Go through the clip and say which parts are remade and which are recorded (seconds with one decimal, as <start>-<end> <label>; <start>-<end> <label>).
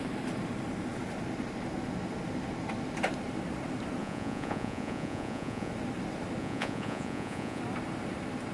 0.0-4.0 recorded; 4.0-5.7 remade; 5.7-6.4 recorded; 6.4-7.6 remade; 7.6-8.5 recorded